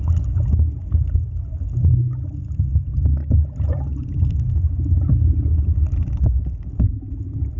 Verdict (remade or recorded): recorded